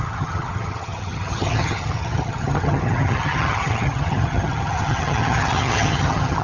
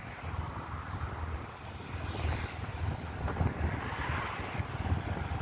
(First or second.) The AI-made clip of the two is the first